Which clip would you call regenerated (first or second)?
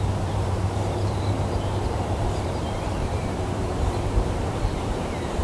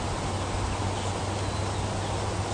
first